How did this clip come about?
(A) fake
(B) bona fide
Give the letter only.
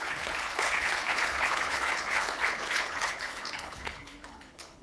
A